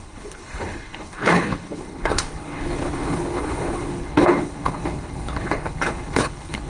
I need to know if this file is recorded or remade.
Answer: remade